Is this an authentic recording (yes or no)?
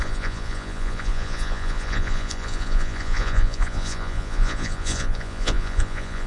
no